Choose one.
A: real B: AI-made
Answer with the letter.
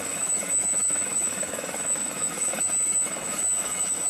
B